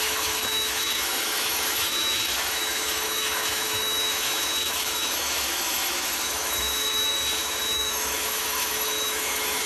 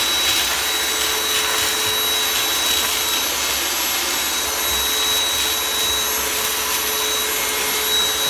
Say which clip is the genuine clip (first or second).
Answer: second